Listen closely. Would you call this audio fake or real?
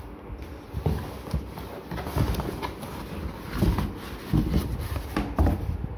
real